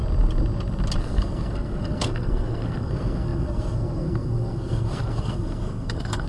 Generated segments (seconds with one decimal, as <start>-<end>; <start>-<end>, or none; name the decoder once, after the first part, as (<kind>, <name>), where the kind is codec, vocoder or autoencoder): 1.0-6.3 (codec, SNAC)